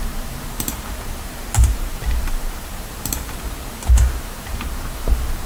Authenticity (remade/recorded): remade